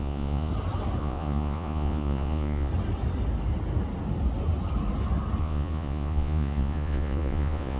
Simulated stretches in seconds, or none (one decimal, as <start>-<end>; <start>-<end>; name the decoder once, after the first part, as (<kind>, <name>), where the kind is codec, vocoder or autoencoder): 0.0-0.5 (vocoder, Vocos); 1.0-2.7; 5.4-7.8